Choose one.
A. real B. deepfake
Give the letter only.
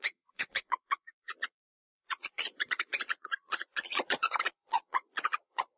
B